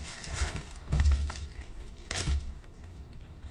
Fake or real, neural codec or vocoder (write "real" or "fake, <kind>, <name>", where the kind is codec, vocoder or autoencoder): fake, codec, DAC